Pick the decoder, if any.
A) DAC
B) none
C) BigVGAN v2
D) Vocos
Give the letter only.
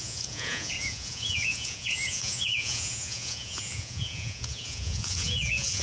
D